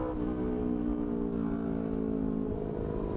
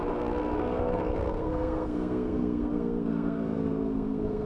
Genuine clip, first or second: first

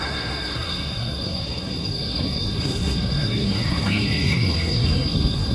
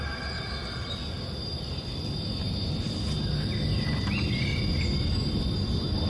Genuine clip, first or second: second